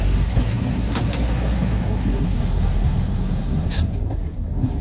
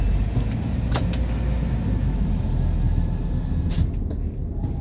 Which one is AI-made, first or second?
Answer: first